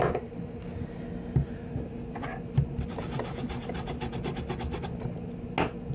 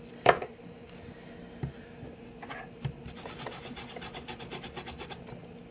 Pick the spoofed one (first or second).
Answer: second